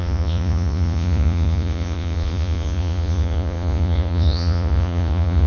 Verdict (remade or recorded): remade